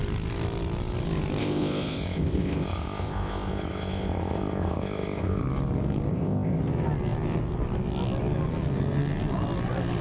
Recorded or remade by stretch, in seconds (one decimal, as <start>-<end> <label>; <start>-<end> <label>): 0.0-1.4 recorded; 1.4-5.4 remade; 5.4-6.1 recorded; 6.1-6.6 remade; 6.6-10.0 recorded